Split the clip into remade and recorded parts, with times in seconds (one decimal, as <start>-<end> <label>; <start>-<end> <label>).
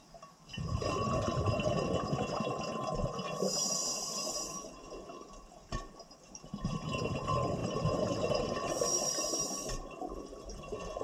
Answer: 0.0-7.6 recorded; 7.6-10.6 remade; 10.6-11.0 recorded